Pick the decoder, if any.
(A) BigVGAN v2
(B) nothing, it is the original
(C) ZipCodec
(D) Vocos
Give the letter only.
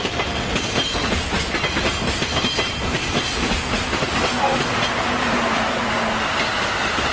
B